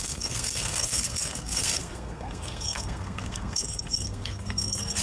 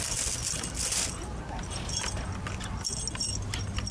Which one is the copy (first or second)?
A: first